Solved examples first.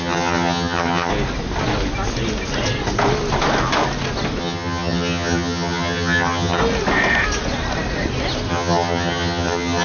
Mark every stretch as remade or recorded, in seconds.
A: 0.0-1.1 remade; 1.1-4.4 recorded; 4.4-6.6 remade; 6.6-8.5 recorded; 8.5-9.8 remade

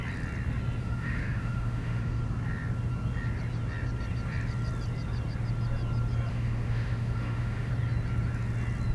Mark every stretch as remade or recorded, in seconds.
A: 0.0-0.8 recorded; 0.8-2.2 remade; 2.2-6.3 recorded; 6.3-7.7 remade; 7.7-8.9 recorded

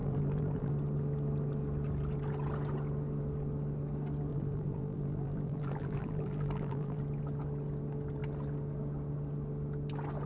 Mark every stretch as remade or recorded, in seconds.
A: 0.0-0.7 remade; 0.7-4.3 recorded; 4.3-7.0 remade; 7.0-10.3 recorded

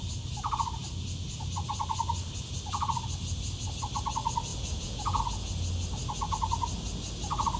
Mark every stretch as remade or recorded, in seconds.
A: 0.0-4.5 recorded; 4.5-5.2 remade; 5.2-7.6 recorded

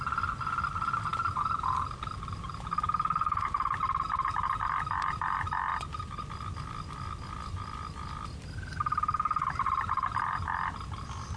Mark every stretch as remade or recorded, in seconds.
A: 0.0-11.4 recorded